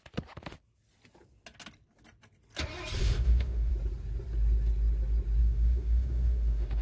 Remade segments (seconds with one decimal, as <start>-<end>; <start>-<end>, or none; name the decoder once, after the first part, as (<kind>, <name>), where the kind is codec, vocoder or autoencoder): 3.0-3.7 (autoencoder, DAC-VAE); 5.4-6.8